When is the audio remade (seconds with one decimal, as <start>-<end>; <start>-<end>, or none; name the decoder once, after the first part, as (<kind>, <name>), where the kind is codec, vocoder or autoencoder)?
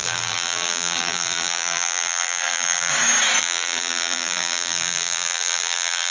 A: 0.0-2.9 (vocoder, BigVGAN v2); 3.4-6.1